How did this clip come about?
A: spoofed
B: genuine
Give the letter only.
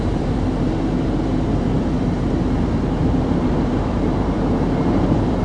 A